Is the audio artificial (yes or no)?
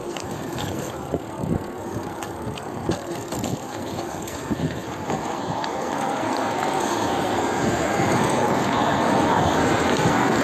yes